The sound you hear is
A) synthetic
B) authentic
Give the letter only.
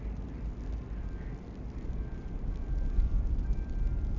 B